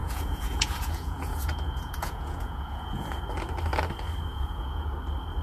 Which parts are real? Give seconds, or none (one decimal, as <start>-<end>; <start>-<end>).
3.2-4.3; 4.9-5.4